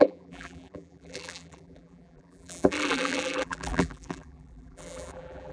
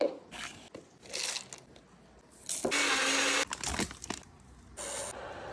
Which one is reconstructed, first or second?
first